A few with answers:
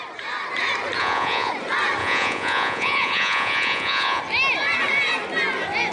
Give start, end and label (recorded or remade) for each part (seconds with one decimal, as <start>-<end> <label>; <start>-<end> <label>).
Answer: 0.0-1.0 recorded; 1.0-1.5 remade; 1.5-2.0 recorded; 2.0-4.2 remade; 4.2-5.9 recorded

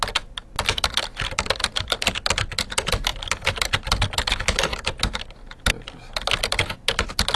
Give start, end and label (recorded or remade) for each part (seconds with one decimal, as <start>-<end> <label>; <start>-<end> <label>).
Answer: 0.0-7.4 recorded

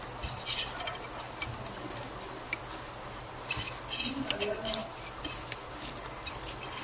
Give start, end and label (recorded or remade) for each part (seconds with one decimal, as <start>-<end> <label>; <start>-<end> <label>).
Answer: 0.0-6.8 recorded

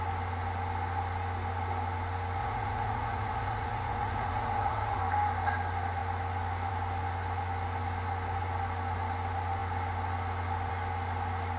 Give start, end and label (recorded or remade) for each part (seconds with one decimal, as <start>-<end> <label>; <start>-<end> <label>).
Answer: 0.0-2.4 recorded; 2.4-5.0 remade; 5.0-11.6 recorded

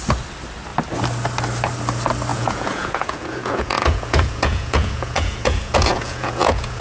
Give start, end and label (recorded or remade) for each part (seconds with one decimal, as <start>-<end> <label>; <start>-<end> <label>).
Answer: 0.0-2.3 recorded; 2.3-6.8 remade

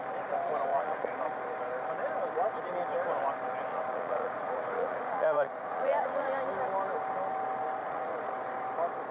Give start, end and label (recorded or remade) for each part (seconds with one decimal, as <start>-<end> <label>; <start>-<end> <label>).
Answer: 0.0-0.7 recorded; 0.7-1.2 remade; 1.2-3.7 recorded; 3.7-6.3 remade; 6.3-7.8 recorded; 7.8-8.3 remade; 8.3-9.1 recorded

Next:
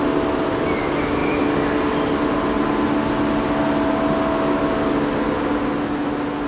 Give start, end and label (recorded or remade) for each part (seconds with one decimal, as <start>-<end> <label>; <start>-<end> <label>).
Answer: 0.0-6.5 recorded